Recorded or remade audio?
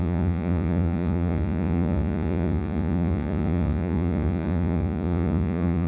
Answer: remade